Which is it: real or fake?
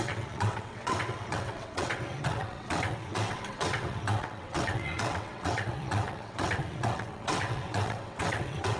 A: fake